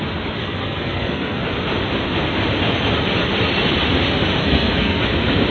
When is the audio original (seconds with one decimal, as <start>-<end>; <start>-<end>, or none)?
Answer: 0.0-0.4; 1.4-4.4; 5.0-5.5